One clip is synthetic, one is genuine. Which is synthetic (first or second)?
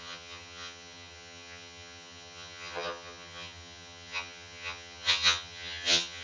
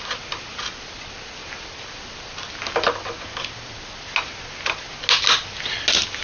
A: first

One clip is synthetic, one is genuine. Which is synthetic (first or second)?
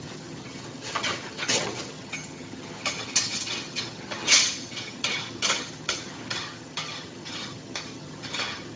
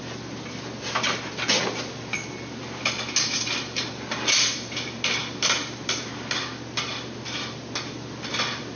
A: first